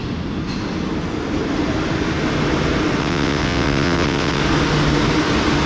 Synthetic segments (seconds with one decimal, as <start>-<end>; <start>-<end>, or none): 3.0-4.4